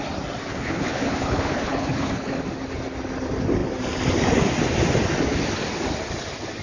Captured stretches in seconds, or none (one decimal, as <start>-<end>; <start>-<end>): 0.0-0.5; 2.4-6.6